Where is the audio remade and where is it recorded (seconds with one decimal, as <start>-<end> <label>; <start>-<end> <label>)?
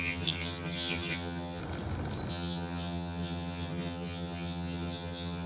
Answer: 0.0-1.6 remade; 1.6-2.3 recorded; 2.3-5.5 remade